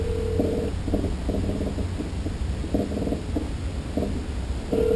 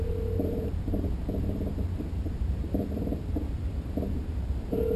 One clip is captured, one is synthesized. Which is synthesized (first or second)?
second